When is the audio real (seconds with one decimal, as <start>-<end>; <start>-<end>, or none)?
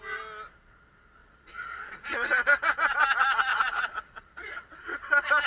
0.0-1.2; 2.3-3.5